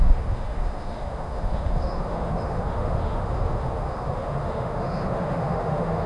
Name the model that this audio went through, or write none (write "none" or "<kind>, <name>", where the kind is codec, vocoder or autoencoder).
autoencoder, DAC-VAE